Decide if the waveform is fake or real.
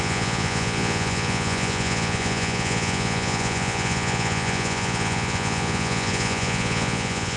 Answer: fake